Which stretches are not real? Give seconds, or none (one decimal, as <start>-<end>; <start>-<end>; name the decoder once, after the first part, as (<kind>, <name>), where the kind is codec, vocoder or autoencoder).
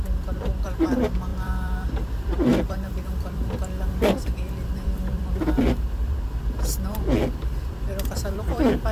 0.0-8.9 (vocoder, BigVGAN v2)